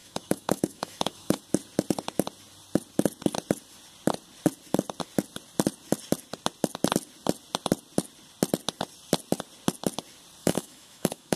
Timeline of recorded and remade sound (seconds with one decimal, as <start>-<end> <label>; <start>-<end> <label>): 0.0-1.4 remade; 1.4-10.4 recorded; 10.4-11.4 remade